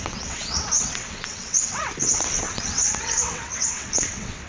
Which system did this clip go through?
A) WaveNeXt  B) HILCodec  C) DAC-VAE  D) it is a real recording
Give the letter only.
A